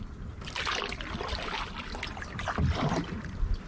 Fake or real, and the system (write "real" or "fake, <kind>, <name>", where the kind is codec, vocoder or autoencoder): real